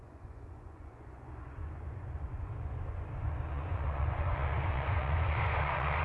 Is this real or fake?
fake